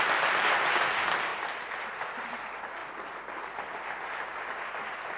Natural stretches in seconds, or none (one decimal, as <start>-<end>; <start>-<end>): 0.0-5.2